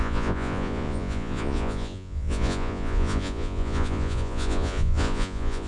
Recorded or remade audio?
remade